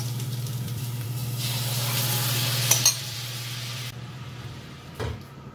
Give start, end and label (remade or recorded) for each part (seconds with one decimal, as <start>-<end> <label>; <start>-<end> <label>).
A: 0.0-1.2 remade; 1.2-3.0 recorded; 3.0-5.5 remade